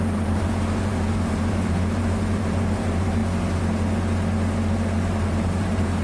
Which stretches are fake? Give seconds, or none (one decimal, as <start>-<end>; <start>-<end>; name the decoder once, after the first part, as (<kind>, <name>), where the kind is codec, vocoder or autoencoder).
0.0-3.2 (vocoder, BigVGAN v2); 5.2-6.0